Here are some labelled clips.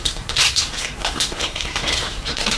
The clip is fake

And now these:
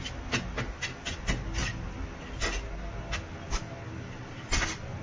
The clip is real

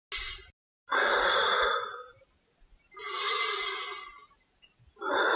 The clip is real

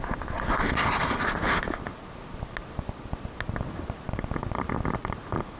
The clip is real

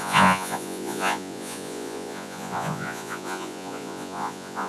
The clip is fake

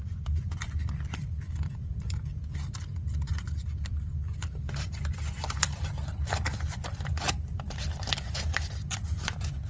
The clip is fake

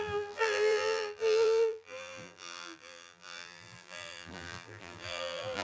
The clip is fake